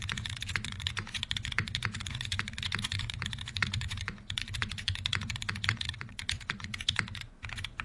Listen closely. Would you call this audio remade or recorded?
remade